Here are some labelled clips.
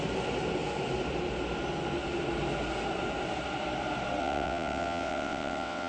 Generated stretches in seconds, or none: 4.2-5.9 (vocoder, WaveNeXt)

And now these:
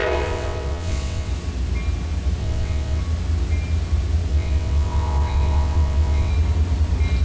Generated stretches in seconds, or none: 0.0-1.3 (vocoder, WaveNeXt); 2.4-3.0; 4.3-6.3

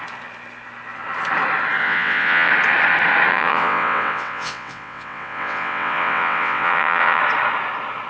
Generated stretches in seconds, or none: 1.8-2.5 (vocoder, WaveNeXt); 3.3-7.2